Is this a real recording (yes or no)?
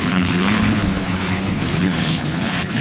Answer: no